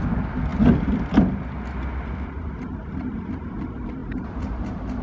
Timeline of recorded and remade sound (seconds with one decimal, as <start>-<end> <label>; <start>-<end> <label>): 0.0-4.0 recorded; 4.0-5.0 remade